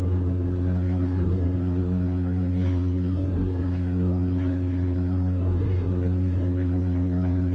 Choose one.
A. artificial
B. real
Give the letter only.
A